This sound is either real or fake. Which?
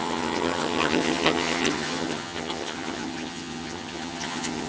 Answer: fake